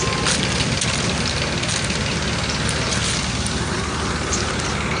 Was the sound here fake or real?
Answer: real